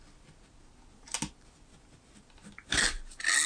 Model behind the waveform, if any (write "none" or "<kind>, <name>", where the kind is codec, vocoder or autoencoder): none